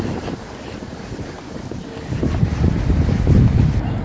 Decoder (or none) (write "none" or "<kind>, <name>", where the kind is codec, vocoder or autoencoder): none